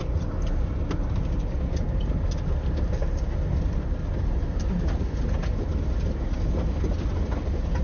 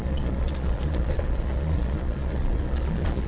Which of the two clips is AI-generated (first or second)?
second